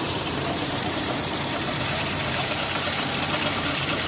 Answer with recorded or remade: remade